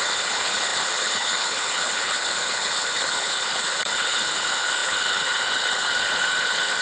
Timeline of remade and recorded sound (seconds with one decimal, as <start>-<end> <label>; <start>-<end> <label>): 0.0-6.8 remade